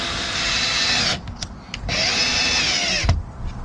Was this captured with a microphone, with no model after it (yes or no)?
yes